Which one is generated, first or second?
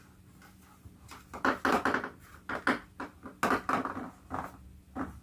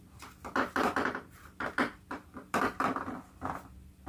second